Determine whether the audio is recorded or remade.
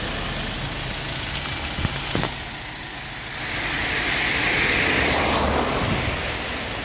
recorded